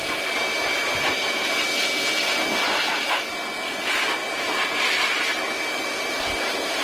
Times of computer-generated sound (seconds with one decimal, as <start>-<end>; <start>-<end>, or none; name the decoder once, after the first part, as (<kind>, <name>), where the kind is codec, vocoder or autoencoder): 0.0-1.5 (vocoder, BigVGAN v2)